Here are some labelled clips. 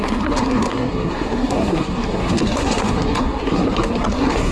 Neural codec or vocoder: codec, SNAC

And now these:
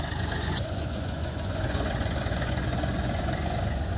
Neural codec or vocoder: vocoder, Vocos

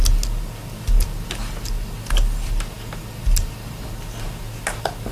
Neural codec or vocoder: none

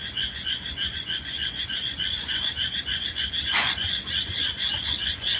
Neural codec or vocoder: vocoder, Vocos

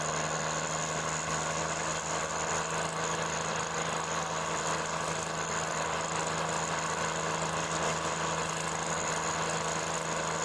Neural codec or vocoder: none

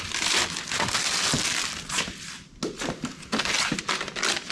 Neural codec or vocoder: none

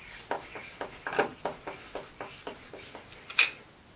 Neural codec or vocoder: none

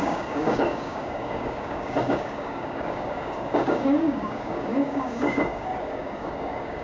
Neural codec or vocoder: codec, DAC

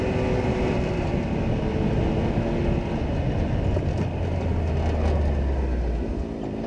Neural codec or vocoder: none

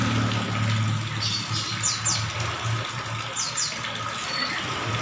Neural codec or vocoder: none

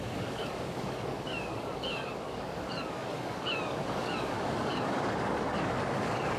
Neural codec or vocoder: codec, DAC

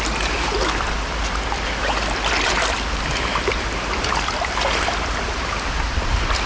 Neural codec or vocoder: vocoder, BigVGAN v2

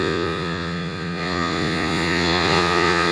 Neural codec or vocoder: vocoder, Vocos